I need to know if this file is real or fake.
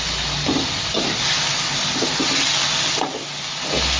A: real